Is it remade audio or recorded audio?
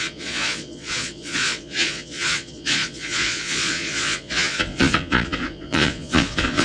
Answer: remade